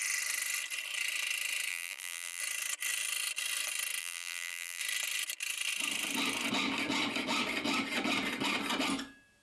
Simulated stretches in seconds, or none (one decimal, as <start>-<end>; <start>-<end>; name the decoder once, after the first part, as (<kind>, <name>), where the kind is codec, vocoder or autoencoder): 1.7-2.4 (vocoder, BigVGAN v2); 4.0-4.8